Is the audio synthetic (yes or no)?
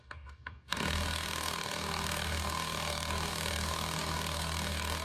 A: yes